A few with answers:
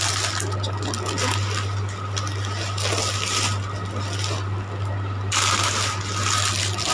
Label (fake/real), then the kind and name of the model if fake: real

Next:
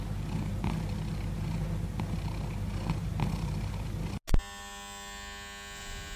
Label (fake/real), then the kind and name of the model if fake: real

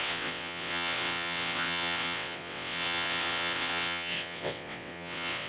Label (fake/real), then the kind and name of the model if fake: fake, vocoder, WaveNeXt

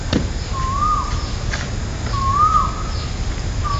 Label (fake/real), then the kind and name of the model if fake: real